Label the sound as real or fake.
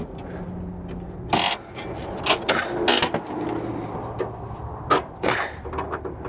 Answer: real